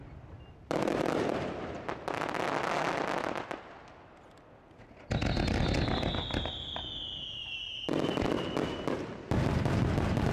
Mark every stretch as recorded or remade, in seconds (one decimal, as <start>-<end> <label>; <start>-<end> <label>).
0.0-7.4 recorded; 7.4-8.1 remade; 8.1-10.3 recorded